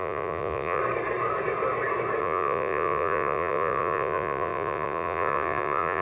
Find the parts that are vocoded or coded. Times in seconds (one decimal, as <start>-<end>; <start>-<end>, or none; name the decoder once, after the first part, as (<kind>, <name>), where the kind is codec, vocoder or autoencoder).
0.0-0.8 (vocoder, Vocos); 2.2-6.0